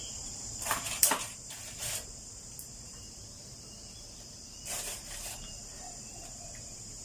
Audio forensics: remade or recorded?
remade